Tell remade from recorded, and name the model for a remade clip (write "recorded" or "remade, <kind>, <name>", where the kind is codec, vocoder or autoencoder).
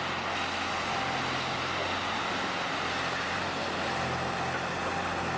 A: recorded